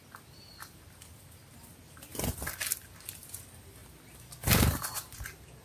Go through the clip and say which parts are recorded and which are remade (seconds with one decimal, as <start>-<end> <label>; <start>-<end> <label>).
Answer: 0.0-5.6 recorded